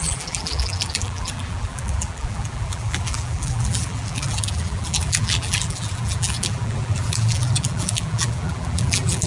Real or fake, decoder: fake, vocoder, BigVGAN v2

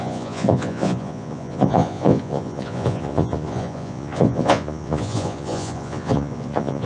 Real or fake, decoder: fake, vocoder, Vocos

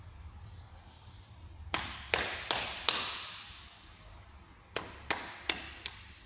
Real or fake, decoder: real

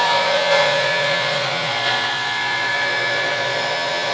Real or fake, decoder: fake, vocoder, Vocos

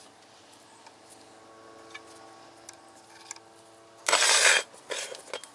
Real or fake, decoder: real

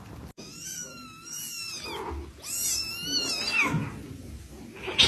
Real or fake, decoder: real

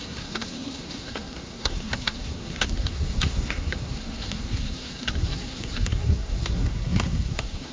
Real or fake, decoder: fake, codec, SNAC